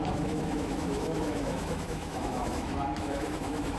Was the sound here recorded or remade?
remade